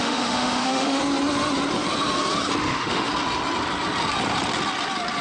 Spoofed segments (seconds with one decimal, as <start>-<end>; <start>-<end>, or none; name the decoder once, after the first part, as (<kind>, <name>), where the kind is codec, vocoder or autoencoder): 0.0-1.0 (autoencoder, DAC-VAE); 2.6-3.1